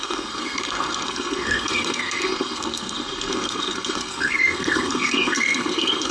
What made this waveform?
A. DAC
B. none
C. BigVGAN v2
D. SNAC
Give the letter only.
D